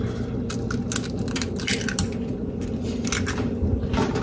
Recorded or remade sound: recorded